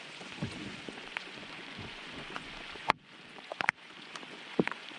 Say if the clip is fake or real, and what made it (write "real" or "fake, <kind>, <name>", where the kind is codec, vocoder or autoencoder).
fake, vocoder, Vocos